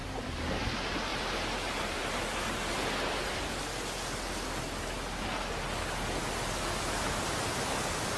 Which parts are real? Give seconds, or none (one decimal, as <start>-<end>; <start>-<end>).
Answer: 0.6-1.1; 2.8-8.2